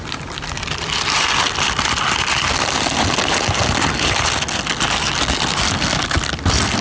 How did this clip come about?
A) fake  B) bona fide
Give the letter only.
B